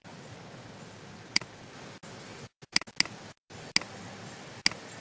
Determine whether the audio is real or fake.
real